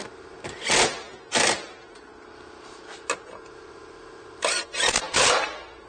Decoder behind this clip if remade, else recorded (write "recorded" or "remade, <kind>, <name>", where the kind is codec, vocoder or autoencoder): recorded